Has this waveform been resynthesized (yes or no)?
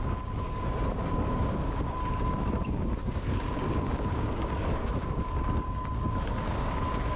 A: yes